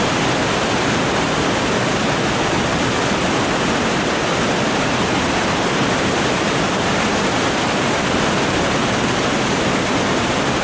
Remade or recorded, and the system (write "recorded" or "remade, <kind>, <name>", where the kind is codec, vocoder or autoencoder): recorded